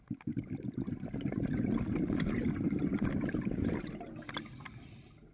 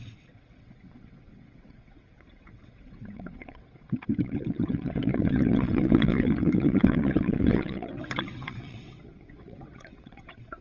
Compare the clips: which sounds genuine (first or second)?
first